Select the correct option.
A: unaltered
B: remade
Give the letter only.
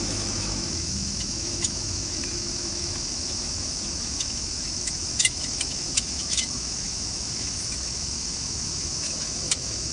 B